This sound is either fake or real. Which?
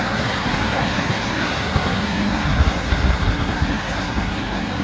fake